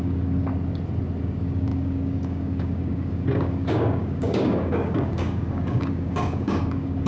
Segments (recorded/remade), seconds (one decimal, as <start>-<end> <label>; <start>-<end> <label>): 0.0-0.5 remade; 0.5-1.2 recorded; 1.2-7.1 remade